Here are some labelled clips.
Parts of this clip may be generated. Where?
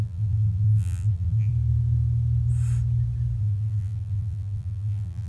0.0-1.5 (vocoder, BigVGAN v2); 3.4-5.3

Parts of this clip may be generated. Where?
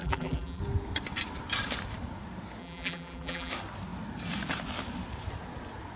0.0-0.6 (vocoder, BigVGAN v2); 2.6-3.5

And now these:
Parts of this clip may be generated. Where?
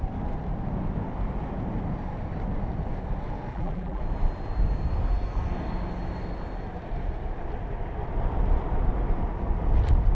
3.5-4.0 (vocoder, BigVGAN v2)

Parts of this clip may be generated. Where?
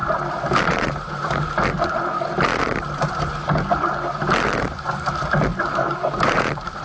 5.5-6.8 (vocoder, BigVGAN v2)